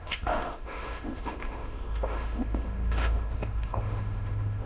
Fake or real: fake